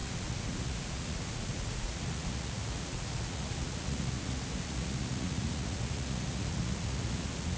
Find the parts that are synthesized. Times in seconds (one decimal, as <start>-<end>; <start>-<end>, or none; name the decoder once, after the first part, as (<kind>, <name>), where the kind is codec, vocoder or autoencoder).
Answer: 0.0-7.6 (vocoder, Vocos)